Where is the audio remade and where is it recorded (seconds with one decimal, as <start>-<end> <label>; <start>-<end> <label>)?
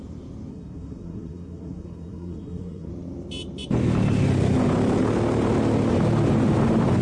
0.0-0.5 recorded; 0.5-2.9 remade; 2.9-7.0 recorded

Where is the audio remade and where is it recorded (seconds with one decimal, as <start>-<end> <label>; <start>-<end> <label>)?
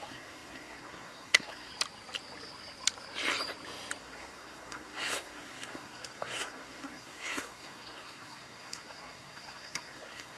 0.0-1.7 remade; 1.7-4.0 recorded; 4.0-10.4 remade